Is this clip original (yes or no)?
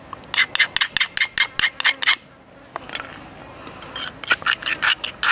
yes